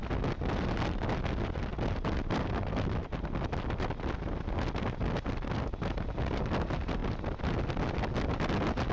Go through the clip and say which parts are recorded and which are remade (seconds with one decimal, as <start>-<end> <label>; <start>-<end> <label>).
0.0-8.9 recorded